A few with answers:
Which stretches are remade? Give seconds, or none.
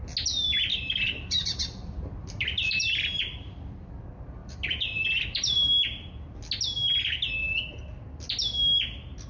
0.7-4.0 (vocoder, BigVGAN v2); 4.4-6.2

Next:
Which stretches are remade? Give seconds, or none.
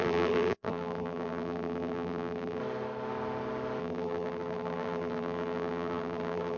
0.0-2.6 (vocoder, BigVGAN v2); 3.8-6.6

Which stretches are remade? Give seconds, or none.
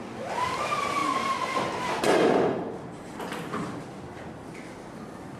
none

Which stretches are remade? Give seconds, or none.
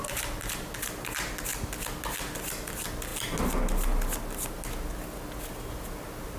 none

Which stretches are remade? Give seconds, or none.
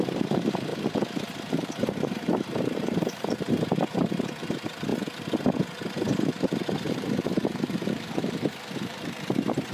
0.0-0.7 (vocoder, BigVGAN v2); 1.3-4.9; 6.2-9.7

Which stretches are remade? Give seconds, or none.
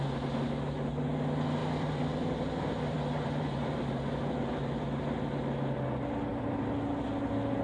1.6-5.0 (vocoder, BigVGAN v2); 6.3-7.1